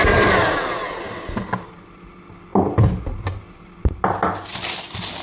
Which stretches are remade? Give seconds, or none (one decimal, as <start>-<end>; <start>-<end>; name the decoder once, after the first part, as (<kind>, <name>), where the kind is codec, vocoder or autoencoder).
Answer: none